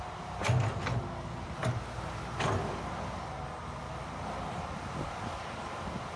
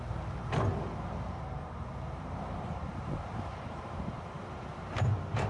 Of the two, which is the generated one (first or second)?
second